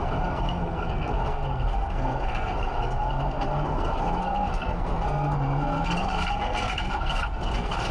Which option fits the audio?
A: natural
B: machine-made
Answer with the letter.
B